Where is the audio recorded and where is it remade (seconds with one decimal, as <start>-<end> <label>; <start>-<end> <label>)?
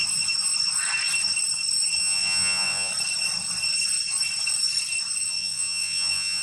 0.0-2.0 recorded; 2.0-2.9 remade; 2.9-5.3 recorded; 5.3-6.4 remade